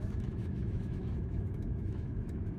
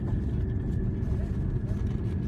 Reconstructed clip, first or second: first